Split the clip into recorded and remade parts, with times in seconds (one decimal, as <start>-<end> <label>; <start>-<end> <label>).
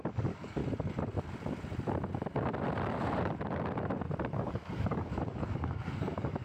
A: 0.0-0.6 remade; 0.6-4.4 recorded; 4.4-6.4 remade